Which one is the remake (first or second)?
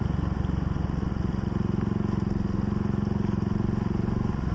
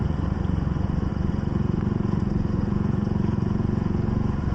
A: second